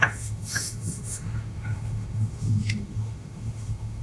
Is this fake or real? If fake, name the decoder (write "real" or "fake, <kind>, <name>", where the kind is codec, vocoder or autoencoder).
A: fake, autoencoder, DAC-VAE